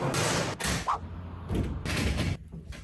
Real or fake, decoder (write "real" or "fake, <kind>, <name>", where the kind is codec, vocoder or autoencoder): real